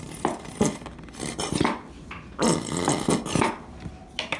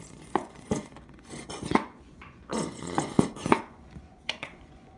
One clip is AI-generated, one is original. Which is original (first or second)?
first